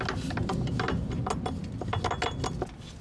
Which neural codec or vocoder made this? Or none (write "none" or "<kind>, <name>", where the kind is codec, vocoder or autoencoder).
none